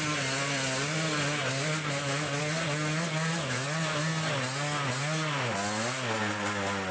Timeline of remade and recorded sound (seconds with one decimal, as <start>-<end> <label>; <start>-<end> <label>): 0.0-6.9 recorded